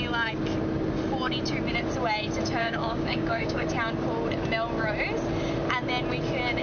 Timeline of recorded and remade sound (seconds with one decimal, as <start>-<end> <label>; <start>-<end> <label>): 0.0-2.6 recorded; 2.6-3.7 remade; 3.7-6.6 recorded